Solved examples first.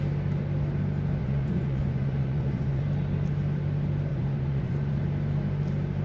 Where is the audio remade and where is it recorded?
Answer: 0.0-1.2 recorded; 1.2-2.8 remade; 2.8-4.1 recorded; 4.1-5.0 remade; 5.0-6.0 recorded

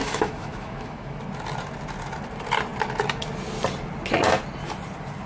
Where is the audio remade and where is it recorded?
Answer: 0.0-1.2 remade; 1.2-5.3 recorded